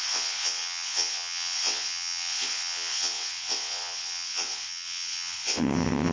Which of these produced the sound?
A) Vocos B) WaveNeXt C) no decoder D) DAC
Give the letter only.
B